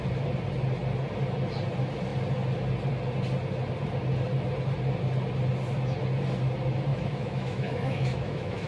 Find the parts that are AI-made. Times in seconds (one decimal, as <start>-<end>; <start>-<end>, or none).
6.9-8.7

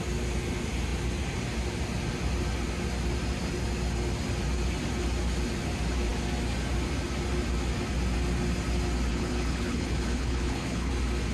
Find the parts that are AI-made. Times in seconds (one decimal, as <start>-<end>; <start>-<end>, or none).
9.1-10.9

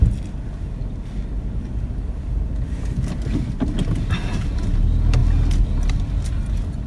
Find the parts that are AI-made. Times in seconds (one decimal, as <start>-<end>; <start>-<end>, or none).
none